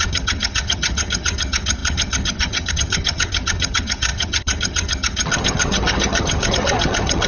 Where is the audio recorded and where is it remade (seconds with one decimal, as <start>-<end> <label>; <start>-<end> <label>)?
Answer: 0.0-7.3 remade